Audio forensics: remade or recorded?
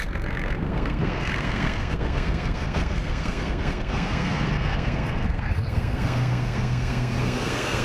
remade